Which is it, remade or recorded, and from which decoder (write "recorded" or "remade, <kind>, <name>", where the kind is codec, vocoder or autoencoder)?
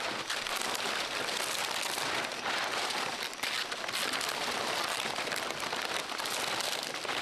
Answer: recorded